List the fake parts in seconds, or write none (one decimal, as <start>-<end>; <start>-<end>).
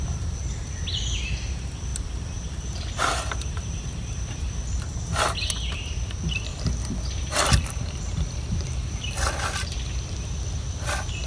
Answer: 1.9-4.6; 6.5-10.9